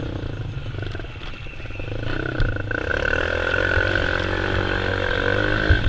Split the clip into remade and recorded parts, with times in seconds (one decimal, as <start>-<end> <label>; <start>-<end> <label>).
0.0-5.9 recorded